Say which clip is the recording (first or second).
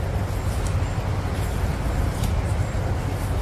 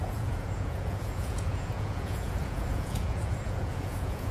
first